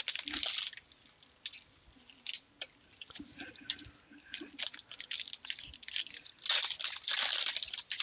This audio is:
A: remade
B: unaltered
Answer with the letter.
B